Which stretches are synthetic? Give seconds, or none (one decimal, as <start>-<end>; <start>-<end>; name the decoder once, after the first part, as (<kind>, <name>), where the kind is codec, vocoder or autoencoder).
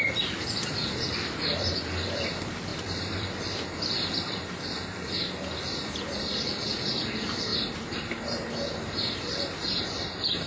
0.0-10.5 (vocoder, BigVGAN v2)